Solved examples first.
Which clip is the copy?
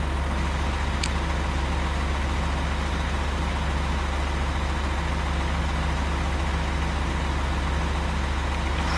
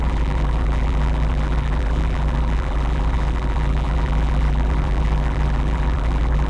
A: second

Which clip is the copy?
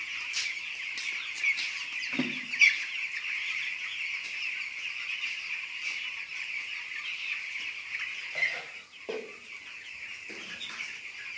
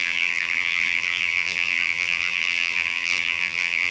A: second